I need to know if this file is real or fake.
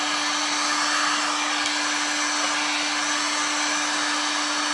real